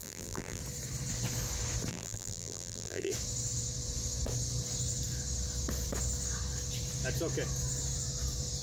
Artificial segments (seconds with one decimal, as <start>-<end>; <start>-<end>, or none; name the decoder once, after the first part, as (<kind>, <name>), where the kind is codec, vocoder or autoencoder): 0.0-0.6 (vocoder, BigVGAN v2); 1.9-3.1